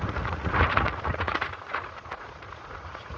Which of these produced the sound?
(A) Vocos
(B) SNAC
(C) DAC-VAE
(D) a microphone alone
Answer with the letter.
A